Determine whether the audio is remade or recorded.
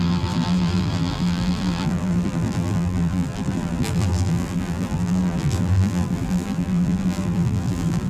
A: remade